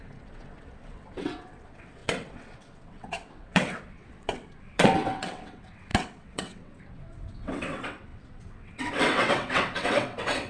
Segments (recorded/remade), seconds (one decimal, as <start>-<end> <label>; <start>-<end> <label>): 0.0-10.5 remade